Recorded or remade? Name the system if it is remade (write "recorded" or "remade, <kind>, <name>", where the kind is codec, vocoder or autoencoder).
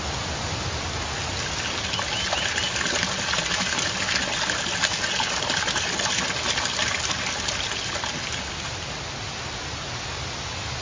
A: recorded